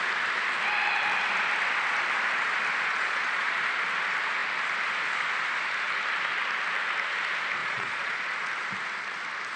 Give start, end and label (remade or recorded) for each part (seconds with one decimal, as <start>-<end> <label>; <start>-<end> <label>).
0.0-2.9 recorded; 2.9-3.5 remade; 3.5-7.6 recorded; 7.6-8.2 remade; 8.2-9.6 recorded

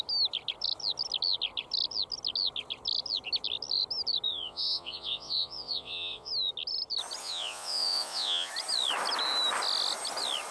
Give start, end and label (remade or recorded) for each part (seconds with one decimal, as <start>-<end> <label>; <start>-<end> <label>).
0.0-4.3 recorded; 4.3-6.3 remade; 6.3-7.2 recorded; 7.2-8.5 remade; 8.5-10.5 recorded

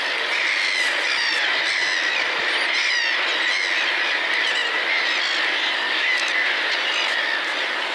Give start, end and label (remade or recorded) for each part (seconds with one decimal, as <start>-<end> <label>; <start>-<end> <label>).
0.0-7.9 recorded

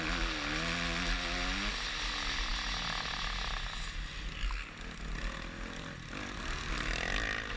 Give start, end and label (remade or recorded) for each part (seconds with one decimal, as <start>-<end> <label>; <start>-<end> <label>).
0.0-7.6 recorded

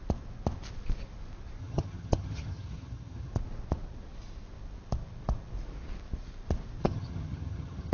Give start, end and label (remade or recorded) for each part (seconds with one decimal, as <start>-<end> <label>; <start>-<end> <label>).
0.0-1.6 recorded; 1.6-3.3 remade; 3.3-6.8 recorded; 6.8-7.9 remade

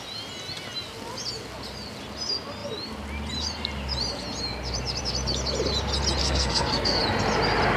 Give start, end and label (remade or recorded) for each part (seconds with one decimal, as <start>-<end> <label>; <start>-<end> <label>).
0.0-6.2 recorded; 6.2-7.0 remade; 7.0-7.8 recorded